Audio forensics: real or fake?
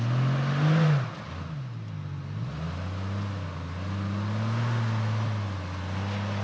real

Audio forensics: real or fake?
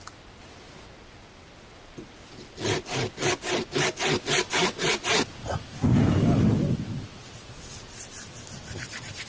real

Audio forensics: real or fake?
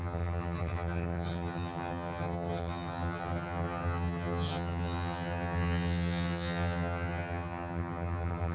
fake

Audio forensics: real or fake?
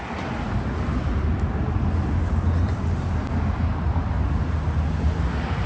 real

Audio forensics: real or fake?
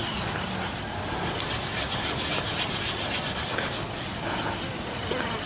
real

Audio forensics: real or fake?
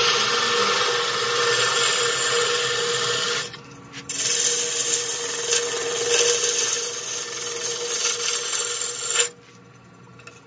real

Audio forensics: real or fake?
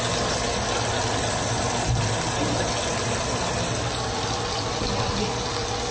real